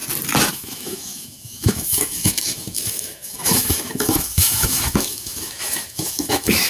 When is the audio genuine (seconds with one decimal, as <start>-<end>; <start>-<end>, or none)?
0.0-0.5